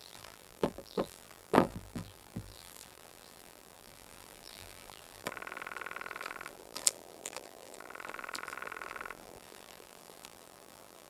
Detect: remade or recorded remade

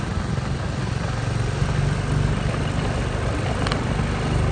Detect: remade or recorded recorded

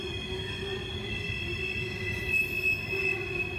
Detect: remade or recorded recorded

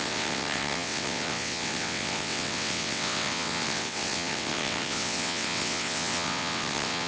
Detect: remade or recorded remade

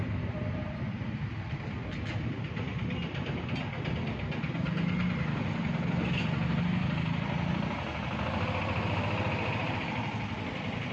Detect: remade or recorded recorded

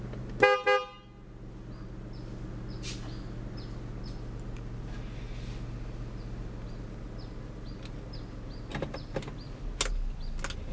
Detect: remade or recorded recorded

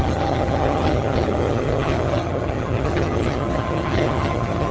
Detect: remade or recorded remade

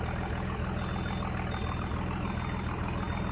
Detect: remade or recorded recorded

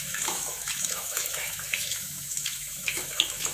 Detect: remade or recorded remade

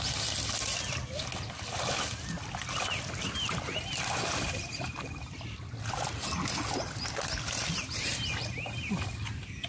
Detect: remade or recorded recorded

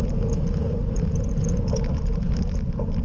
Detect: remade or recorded recorded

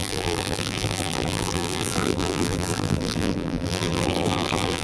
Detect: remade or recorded remade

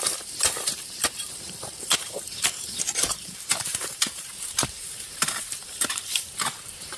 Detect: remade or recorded remade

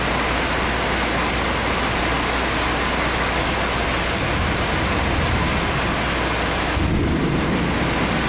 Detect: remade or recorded recorded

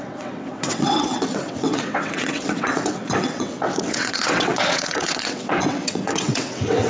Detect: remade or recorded remade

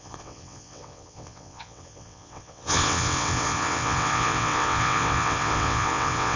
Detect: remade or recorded remade